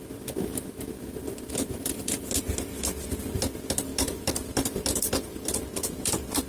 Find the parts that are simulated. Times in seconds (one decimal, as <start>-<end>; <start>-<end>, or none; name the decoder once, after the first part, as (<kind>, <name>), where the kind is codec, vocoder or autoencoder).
0.0-6.5 (vocoder, BigVGAN v2)